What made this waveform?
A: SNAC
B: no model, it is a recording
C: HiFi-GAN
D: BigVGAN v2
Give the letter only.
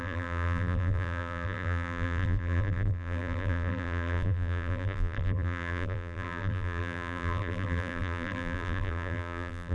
D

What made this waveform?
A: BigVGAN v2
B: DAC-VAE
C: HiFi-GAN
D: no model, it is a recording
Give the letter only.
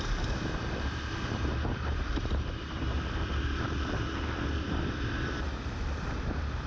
A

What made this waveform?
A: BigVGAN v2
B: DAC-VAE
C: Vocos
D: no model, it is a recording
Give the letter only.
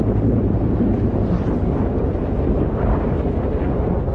A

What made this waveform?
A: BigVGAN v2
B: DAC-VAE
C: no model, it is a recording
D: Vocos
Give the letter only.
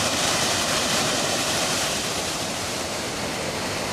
A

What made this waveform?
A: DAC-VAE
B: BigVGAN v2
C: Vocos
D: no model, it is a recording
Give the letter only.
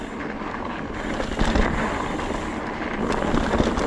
D